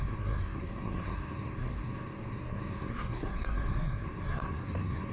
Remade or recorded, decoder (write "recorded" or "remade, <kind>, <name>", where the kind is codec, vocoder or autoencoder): remade, codec, SNAC